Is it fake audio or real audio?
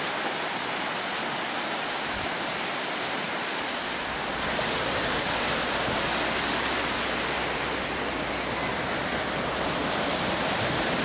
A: real